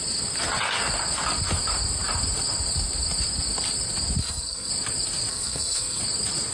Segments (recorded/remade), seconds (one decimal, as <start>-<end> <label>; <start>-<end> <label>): 0.0-4.2 recorded; 4.2-4.7 remade; 4.7-5.3 recorded; 5.3-6.0 remade; 6.0-6.5 recorded